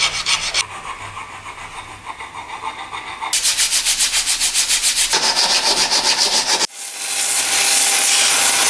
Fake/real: real